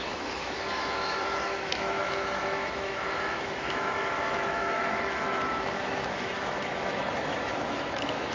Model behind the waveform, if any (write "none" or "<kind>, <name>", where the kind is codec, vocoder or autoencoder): autoencoder, DAC-VAE